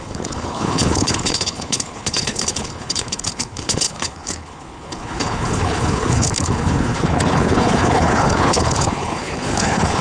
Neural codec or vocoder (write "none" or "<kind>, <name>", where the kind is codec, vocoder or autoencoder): codec, HILCodec